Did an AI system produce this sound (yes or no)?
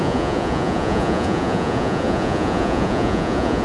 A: yes